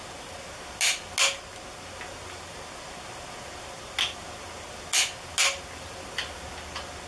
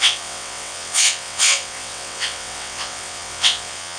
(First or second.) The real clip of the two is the first